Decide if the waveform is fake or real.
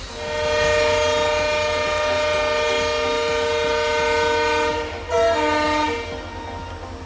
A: real